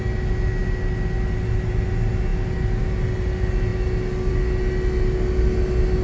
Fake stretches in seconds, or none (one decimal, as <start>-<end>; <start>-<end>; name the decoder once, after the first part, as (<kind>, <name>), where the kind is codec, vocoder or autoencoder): none